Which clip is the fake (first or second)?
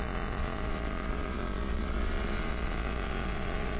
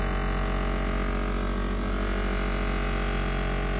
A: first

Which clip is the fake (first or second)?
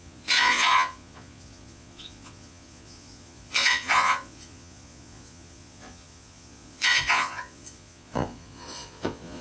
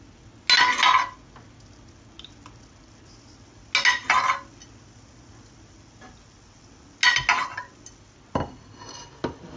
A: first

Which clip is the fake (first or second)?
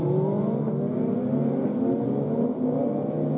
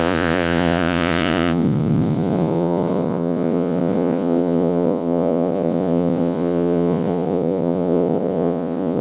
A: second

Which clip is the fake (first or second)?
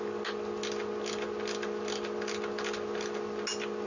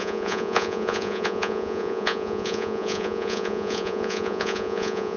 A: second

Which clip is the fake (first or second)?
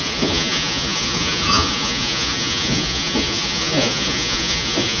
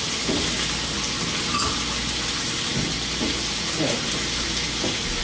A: first